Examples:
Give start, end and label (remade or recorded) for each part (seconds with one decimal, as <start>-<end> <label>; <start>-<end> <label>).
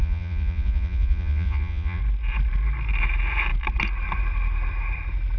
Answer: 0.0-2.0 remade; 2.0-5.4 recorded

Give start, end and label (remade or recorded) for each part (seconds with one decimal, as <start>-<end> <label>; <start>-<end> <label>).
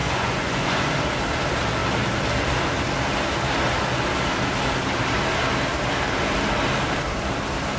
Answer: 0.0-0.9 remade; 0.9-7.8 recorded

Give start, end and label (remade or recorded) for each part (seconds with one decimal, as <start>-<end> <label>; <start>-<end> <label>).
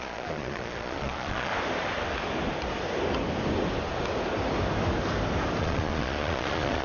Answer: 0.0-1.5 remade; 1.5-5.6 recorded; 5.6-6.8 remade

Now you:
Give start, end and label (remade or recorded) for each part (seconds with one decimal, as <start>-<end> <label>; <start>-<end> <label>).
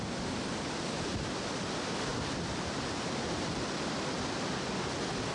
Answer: 0.0-2.1 recorded; 2.1-3.6 remade; 3.6-5.3 recorded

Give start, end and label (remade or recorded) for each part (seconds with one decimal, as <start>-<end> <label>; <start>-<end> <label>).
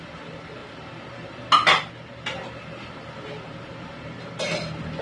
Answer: 0.0-5.0 recorded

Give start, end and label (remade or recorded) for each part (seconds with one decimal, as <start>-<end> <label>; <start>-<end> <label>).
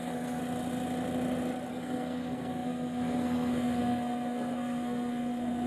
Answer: 0.0-0.4 remade; 0.4-1.7 recorded; 1.7-5.7 remade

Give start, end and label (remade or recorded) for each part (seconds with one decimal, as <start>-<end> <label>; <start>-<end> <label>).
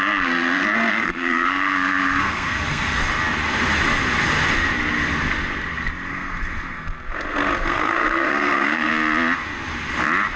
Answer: 0.0-3.0 remade; 3.0-6.1 recorded; 6.1-8.9 remade; 8.9-10.4 recorded